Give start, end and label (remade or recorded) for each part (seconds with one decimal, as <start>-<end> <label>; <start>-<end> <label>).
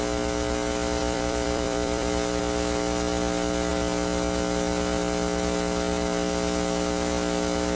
0.0-1.0 recorded; 1.0-2.4 remade; 2.4-7.8 recorded